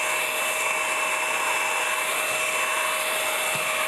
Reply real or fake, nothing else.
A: real